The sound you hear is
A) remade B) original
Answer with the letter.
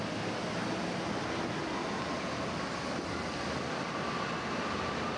B